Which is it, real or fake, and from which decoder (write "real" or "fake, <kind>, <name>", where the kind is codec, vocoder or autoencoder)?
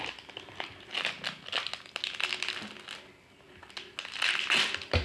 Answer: real